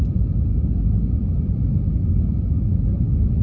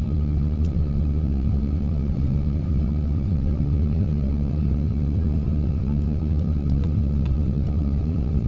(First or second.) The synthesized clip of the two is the second